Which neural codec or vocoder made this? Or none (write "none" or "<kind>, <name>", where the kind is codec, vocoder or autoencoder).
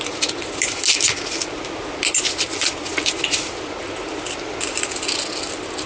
none